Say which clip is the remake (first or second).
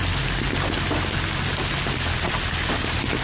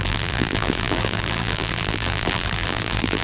second